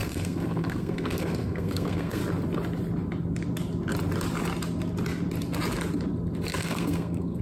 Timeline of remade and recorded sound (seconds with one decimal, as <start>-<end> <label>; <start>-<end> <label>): 0.0-2.2 remade; 2.2-6.6 recorded; 6.6-7.4 remade